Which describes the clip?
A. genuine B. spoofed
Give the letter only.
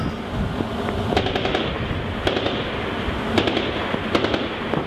A